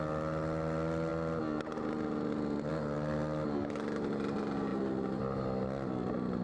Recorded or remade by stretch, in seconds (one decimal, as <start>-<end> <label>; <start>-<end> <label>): 0.0-6.4 recorded